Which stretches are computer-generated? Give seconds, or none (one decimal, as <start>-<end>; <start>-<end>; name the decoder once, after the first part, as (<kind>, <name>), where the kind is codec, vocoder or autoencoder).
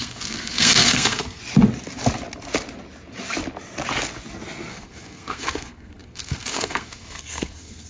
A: 0.0-1.4 (codec, SNAC); 4.7-7.9